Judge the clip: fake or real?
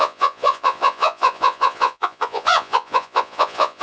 fake